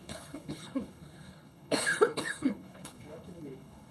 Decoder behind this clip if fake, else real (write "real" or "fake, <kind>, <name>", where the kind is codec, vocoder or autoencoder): fake, codec, HILCodec